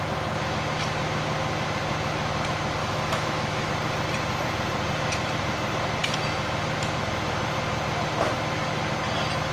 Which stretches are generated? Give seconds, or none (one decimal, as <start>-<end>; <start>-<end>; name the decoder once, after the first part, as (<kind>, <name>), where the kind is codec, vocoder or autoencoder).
2.8-3.7 (autoencoder, DAC-VAE)